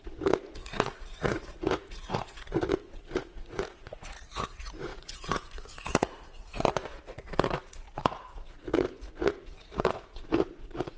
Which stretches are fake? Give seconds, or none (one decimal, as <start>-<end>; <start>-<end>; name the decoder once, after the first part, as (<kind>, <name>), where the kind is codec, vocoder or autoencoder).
0.0-11.0 (vocoder, Vocos)